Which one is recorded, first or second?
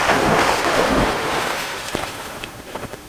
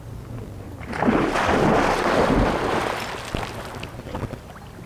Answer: second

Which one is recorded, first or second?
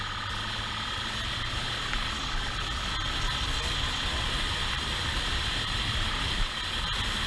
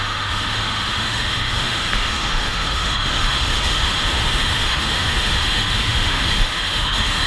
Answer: first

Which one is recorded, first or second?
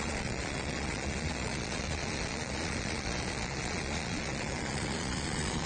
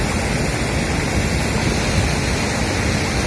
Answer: second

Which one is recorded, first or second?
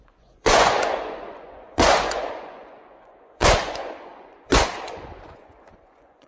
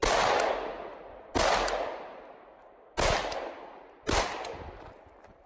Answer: second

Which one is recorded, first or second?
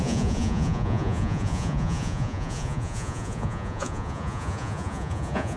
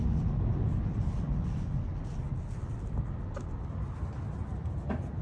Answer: second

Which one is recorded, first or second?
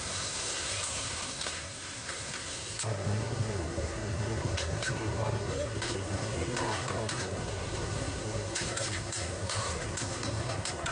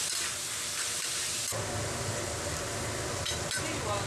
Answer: second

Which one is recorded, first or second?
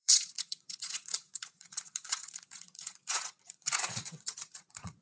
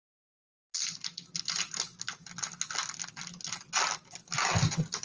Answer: second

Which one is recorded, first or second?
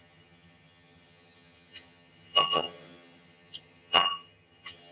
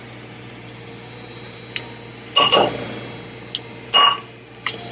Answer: second